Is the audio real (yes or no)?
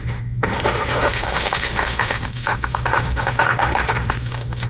no